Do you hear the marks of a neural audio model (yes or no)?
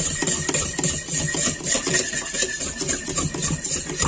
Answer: no